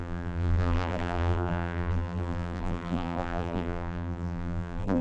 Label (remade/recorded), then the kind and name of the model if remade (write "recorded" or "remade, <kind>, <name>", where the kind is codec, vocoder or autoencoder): remade, vocoder, BigVGAN v2